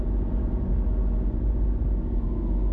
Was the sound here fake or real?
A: real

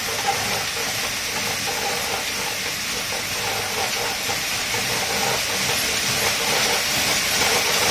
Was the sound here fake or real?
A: real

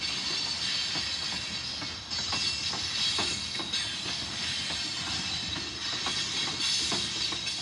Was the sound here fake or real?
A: real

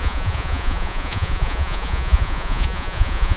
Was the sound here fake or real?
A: fake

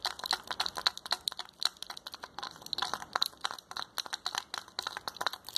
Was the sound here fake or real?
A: real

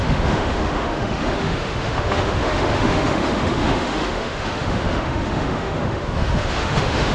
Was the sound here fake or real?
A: fake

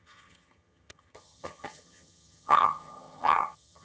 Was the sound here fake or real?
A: fake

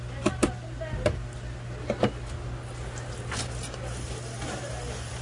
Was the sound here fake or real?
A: real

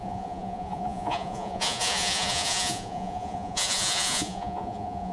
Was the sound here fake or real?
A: fake